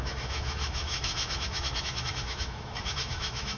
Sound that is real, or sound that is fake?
fake